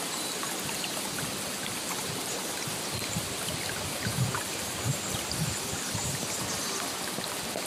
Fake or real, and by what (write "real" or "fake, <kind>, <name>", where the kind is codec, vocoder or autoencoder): real